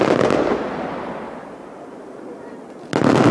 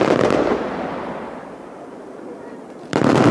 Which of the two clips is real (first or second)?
first